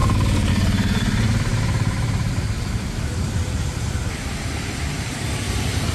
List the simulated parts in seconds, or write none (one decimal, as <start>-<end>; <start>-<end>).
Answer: 0.0-5.9